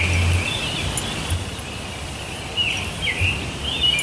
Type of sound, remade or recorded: recorded